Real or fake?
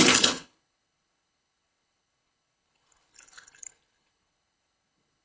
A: fake